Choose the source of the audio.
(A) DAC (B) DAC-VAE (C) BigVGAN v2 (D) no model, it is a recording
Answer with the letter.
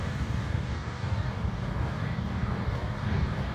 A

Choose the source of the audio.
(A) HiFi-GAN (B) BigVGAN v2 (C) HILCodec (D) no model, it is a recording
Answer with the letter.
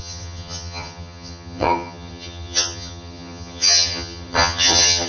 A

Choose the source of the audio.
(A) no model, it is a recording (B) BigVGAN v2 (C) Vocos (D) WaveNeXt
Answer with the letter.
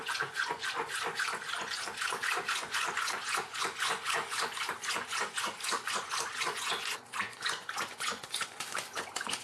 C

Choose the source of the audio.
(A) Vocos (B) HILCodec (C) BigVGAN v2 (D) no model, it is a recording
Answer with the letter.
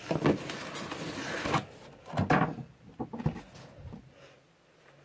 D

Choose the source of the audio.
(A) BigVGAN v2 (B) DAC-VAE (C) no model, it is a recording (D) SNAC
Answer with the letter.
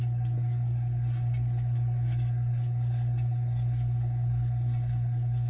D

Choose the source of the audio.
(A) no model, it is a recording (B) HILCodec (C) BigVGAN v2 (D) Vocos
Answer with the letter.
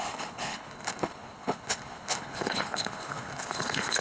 B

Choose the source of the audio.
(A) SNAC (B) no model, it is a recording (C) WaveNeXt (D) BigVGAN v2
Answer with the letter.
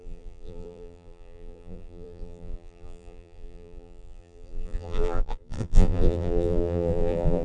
D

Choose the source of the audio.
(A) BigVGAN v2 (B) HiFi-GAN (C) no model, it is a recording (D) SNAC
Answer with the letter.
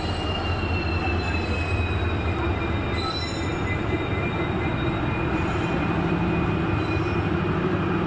C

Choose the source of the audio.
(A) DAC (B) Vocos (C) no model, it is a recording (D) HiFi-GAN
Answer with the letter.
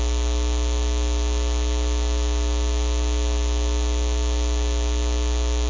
C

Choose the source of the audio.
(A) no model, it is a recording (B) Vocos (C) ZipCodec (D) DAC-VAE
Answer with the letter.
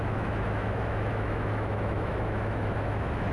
D